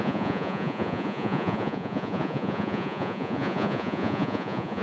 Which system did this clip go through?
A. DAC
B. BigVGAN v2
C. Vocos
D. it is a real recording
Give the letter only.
C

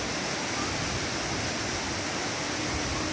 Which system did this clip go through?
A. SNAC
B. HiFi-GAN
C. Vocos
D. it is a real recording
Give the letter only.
D